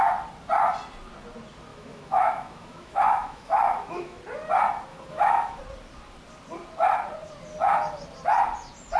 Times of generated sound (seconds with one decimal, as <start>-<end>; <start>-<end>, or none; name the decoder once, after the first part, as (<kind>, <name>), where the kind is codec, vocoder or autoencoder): 1.7-4.2 (autoencoder, DAC-VAE); 4.9-5.6